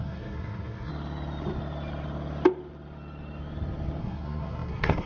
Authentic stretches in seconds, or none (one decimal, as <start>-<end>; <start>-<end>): 0.9-4.0